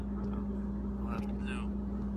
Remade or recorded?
recorded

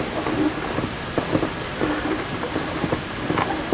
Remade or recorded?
recorded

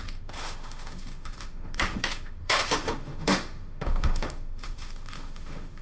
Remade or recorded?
remade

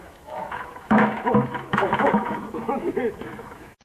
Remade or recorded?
remade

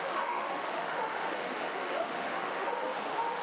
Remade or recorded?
remade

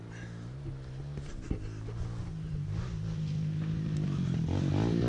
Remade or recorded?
recorded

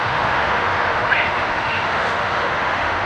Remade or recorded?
remade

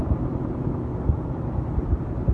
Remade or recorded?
recorded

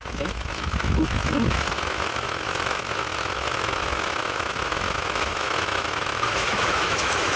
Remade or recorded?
remade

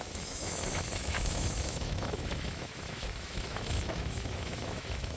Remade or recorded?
remade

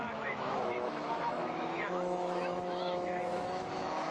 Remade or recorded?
remade